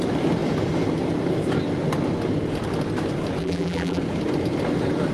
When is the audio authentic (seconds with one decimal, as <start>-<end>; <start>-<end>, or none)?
0.0-3.4; 4.0-5.1